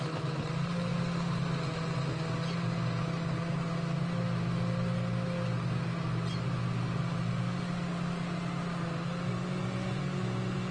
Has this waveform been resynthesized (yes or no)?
no